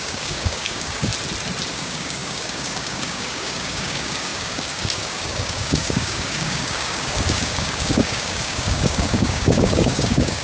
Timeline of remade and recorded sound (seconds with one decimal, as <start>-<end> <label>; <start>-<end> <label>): 0.0-1.1 remade; 1.1-1.7 recorded; 1.7-10.4 remade